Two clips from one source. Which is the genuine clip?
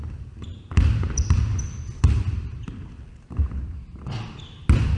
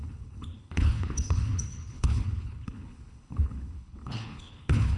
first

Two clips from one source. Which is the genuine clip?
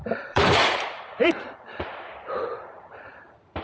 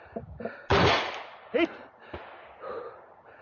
second